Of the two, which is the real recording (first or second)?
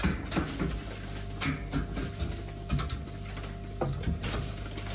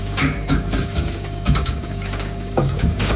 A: first